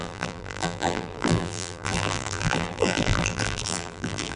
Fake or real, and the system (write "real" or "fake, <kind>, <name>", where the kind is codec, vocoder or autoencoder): fake, vocoder, BigVGAN v2